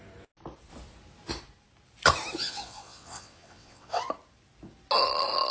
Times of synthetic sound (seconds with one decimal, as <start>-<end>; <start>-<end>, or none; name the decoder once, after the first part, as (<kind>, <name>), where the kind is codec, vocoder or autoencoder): 2.4-4.0 (vocoder, WaveNeXt)